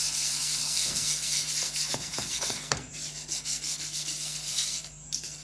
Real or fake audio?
fake